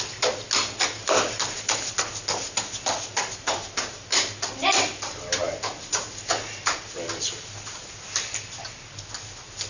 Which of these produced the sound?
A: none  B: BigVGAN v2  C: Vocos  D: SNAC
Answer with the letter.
A